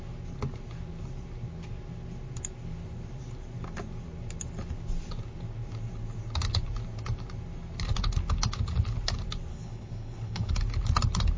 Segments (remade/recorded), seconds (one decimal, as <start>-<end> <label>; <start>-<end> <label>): 0.0-9.5 recorded; 9.5-10.6 remade; 10.6-11.4 recorded

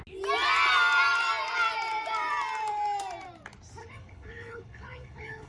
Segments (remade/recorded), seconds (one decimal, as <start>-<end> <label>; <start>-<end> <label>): 0.0-3.8 recorded; 3.8-5.5 remade